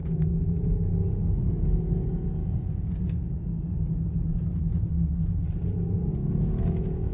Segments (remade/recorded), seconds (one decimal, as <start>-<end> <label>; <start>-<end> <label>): 0.0-2.4 recorded; 2.4-3.3 remade; 3.3-4.3 recorded; 4.3-4.9 remade; 4.9-6.1 recorded; 6.1-7.1 remade